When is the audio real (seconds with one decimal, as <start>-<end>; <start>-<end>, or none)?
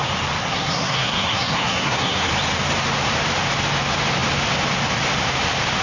0.0-0.4; 2.3-5.8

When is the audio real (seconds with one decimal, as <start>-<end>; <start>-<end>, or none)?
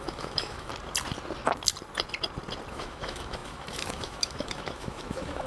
0.7-2.7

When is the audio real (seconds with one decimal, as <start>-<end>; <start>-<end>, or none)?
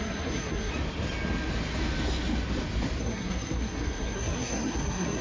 0.7-3.0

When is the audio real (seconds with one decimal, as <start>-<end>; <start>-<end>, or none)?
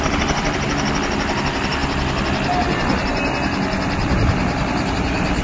0.0-5.4